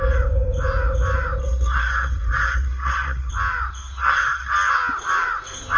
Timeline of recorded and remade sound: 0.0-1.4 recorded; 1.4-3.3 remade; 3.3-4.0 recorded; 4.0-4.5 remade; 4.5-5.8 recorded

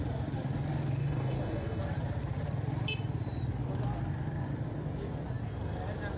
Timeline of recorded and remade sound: 0.0-1.0 recorded; 1.0-1.8 remade; 1.8-6.2 recorded

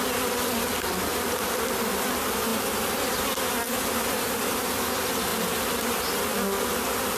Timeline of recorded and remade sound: 0.0-7.2 recorded

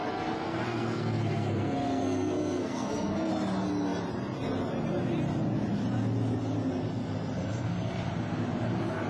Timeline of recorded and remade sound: 0.0-3.3 remade; 3.3-9.1 recorded

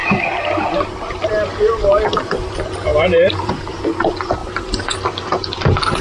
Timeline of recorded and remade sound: 0.0-2.9 recorded; 2.9-3.5 remade; 3.5-4.4 recorded; 4.4-5.0 remade; 5.0-6.0 recorded